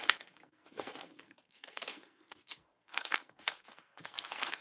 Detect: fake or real fake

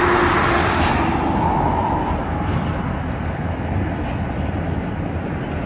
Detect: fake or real real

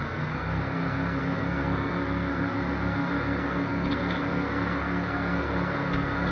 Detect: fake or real fake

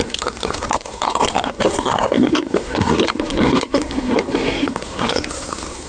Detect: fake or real fake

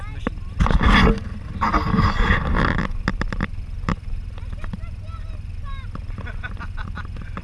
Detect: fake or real real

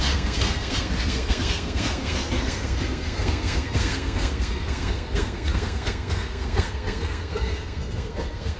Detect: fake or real fake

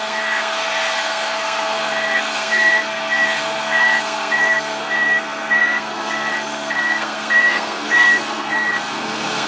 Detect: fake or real fake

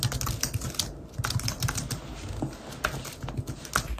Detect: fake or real real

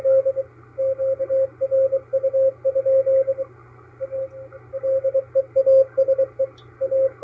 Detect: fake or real real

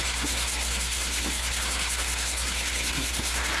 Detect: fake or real fake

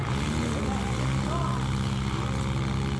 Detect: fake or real real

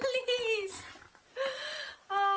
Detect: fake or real real